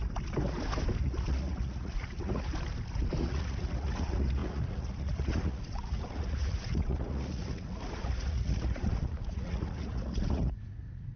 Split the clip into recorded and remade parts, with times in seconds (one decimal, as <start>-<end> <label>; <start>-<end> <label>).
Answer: 0.0-1.0 recorded; 1.0-2.5 remade; 2.5-3.2 recorded; 3.2-11.2 remade